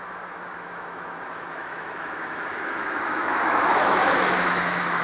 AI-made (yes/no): yes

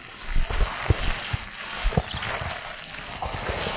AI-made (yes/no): no